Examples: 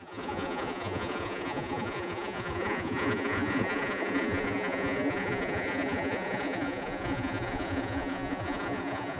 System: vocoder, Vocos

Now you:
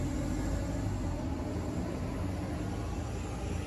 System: none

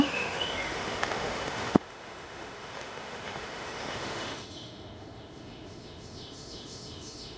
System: autoencoder, DAC-VAE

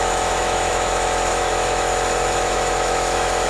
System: autoencoder, DAC-VAE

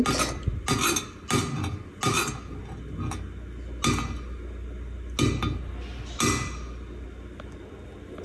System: none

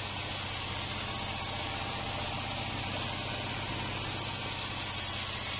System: none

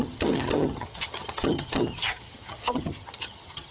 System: vocoder, HiFi-GAN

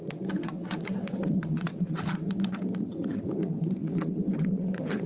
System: vocoder, WaveNeXt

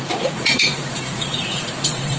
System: vocoder, Vocos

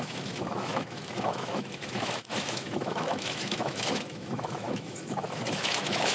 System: autoencoder, DAC-VAE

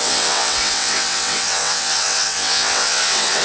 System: vocoder, WaveNeXt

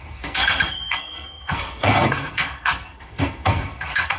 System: codec, SNAC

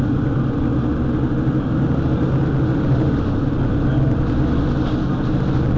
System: none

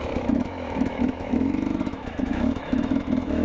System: autoencoder, DAC-VAE